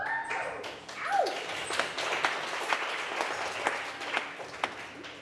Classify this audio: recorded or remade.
recorded